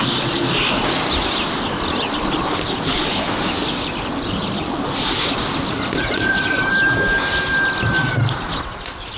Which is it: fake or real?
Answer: real